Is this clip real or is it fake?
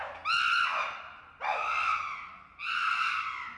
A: real